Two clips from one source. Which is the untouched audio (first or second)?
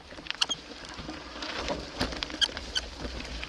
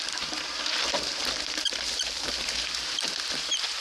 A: second